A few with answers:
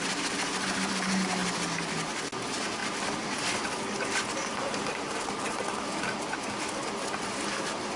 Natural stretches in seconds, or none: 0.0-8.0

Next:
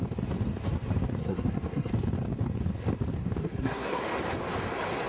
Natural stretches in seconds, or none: 0.0-1.2; 1.9-3.4; 4.0-5.1